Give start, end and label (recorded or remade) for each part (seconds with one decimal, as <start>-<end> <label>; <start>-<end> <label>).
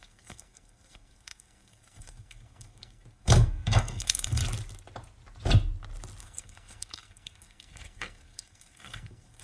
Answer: 0.0-4.4 remade; 4.4-6.2 recorded; 6.2-9.4 remade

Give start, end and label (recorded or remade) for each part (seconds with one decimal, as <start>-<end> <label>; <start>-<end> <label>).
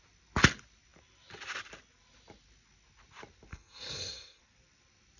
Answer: 0.0-3.5 recorded; 3.5-4.4 remade; 4.4-5.2 recorded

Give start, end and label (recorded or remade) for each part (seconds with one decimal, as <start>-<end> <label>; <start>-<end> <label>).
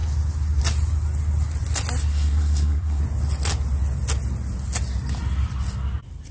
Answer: 0.0-2.1 recorded; 2.1-3.0 remade; 3.0-6.3 recorded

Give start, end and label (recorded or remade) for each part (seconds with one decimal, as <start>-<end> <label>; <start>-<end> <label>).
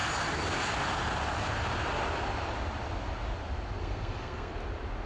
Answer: 0.0-3.8 recorded; 3.8-4.5 remade; 4.5-5.1 recorded